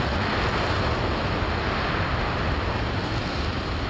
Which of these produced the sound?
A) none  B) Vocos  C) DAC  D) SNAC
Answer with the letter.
A